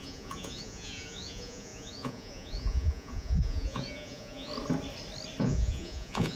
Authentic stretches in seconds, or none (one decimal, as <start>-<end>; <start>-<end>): 4.5-5.4